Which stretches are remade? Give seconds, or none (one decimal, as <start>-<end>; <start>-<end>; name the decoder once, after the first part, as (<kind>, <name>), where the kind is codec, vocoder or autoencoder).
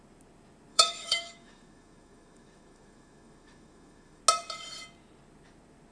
0.7-4.2 (autoencoder, DAC-VAE)